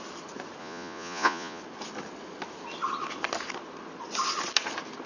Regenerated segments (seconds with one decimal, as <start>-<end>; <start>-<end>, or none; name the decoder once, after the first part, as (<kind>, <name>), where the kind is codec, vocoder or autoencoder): 0.6-1.6 (vocoder, Vocos)